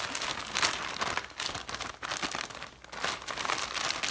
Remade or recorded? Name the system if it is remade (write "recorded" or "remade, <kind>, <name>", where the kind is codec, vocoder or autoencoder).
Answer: recorded